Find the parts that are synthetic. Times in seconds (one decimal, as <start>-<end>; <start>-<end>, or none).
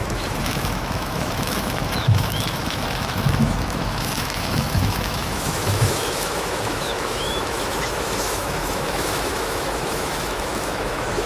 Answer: 0.0-11.3